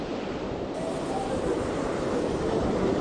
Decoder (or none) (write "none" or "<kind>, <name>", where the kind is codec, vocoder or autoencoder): vocoder, BigVGAN v2